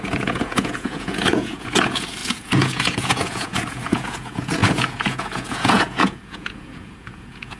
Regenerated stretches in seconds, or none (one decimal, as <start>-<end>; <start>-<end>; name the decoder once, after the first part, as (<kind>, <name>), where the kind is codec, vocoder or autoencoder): 0.0-7.6 (vocoder, Vocos)